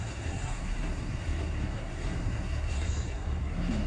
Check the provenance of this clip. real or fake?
fake